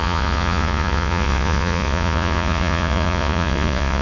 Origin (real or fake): fake